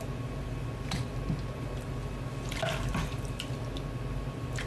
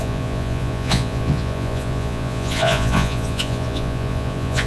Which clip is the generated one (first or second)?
second